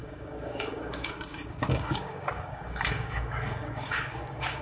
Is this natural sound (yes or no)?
no